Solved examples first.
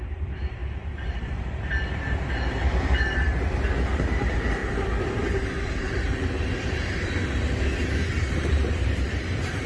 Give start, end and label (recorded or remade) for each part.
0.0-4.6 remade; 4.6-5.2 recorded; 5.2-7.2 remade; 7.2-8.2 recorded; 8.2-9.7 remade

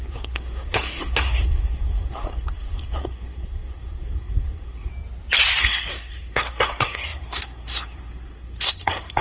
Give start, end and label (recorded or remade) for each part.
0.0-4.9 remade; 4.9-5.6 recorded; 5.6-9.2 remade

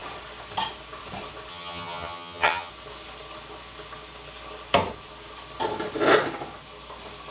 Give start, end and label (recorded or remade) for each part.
0.0-1.5 recorded; 1.5-2.7 remade; 2.7-7.3 recorded